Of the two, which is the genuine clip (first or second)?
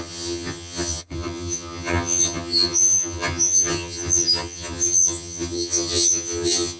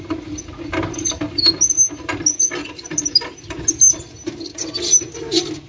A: second